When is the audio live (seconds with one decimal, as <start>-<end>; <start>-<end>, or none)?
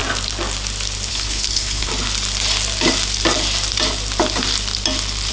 0.0-1.1; 1.9-5.3